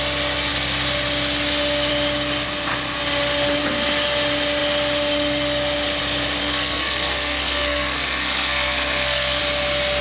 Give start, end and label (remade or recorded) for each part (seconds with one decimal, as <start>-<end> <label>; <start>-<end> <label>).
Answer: 0.0-6.4 recorded; 6.4-9.4 remade; 9.4-10.0 recorded